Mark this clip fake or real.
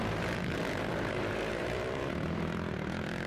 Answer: fake